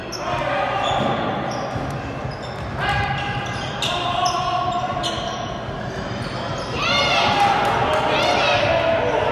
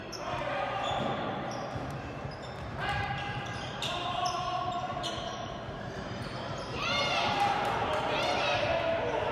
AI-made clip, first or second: second